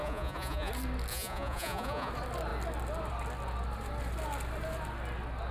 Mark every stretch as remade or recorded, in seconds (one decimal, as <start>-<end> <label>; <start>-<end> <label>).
0.0-0.7 remade; 0.7-1.1 recorded; 1.1-2.1 remade; 2.1-5.5 recorded